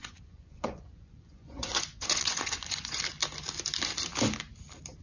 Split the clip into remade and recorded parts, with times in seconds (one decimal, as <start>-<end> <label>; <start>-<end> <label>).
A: 0.0-3.0 remade; 3.0-5.0 recorded